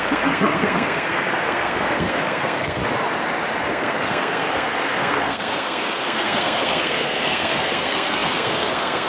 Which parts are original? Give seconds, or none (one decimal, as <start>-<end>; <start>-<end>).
2.8-3.7